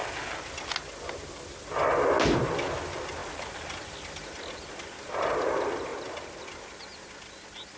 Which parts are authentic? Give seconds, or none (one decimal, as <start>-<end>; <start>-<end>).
0.0-7.8